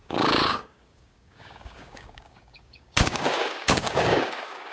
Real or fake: fake